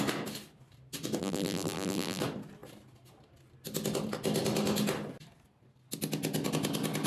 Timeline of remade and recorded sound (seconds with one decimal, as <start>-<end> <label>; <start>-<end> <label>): 0.0-1.2 recorded; 1.2-2.2 remade; 2.2-7.1 recorded